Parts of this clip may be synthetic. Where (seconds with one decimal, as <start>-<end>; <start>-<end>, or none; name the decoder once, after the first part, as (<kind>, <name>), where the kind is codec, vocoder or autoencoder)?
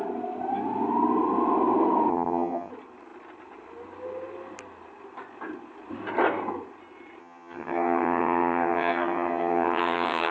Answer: 2.1-2.7 (vocoder, HiFi-GAN); 7.2-10.3